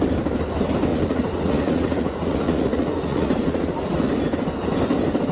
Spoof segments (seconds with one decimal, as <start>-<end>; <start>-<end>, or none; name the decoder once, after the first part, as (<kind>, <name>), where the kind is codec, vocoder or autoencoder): 0.9-4.1 (vocoder, Vocos)